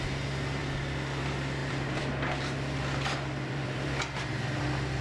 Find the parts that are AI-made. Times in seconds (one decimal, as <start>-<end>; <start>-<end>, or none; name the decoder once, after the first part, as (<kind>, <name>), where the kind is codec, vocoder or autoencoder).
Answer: 1.6-4.6 (vocoder, BigVGAN v2)